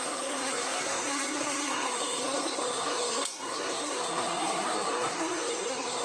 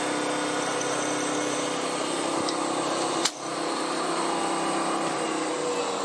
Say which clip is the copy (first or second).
first